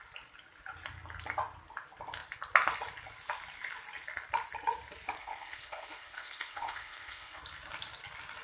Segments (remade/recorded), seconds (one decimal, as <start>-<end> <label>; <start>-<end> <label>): 0.0-5.2 recorded; 5.2-7.4 remade; 7.4-8.4 recorded